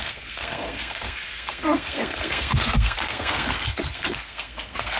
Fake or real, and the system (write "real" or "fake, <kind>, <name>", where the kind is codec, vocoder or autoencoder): fake, codec, SNAC